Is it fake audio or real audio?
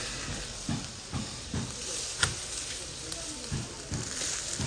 fake